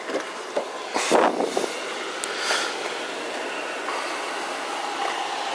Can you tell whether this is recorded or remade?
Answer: recorded